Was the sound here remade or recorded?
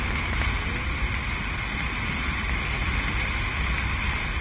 recorded